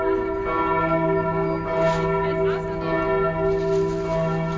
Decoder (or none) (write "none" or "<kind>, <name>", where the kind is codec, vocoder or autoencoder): none